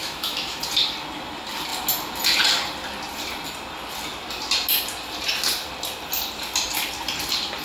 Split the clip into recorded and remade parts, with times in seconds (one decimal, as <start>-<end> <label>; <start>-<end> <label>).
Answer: 0.0-0.6 remade; 0.6-7.6 recorded